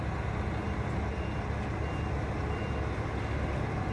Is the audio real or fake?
real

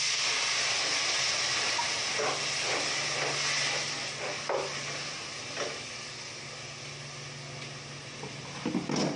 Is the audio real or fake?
real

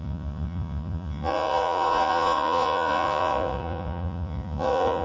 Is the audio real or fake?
fake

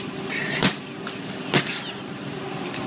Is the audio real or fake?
real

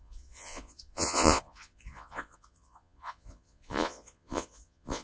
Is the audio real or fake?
fake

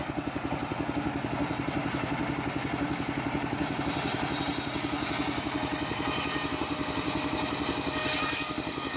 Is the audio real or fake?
real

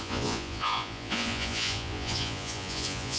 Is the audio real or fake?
fake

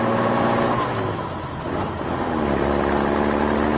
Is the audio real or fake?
real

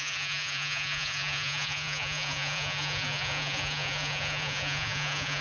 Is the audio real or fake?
fake